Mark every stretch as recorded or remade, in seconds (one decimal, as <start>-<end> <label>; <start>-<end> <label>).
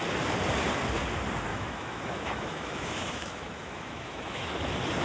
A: 0.0-1.5 recorded; 1.5-4.5 remade; 4.5-5.0 recorded